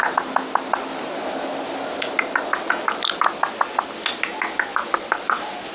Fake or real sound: real